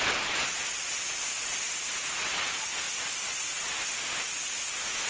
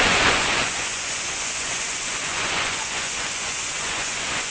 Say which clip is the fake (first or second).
second